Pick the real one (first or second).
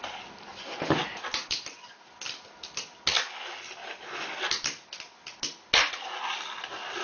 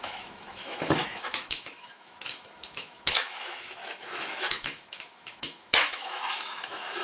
first